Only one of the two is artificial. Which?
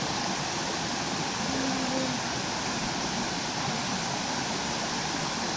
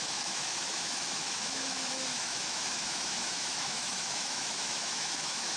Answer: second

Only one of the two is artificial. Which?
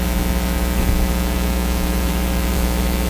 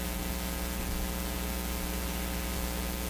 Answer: first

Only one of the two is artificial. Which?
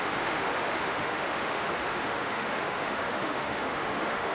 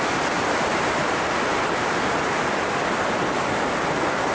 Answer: first